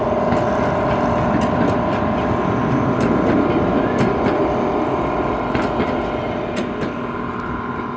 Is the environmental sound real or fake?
real